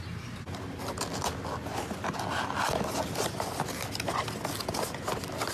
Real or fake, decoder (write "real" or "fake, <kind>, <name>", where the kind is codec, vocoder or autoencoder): real